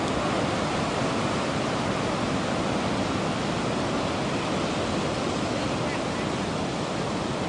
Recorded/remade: recorded